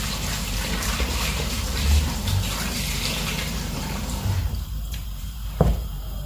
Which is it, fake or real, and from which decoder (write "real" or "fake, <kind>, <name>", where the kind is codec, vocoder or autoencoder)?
fake, vocoder, BigVGAN v2